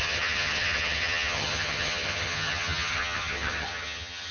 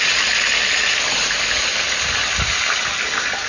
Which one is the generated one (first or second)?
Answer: first